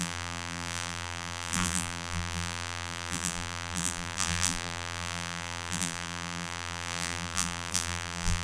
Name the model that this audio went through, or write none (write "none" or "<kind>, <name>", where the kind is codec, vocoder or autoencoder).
vocoder, BigVGAN v2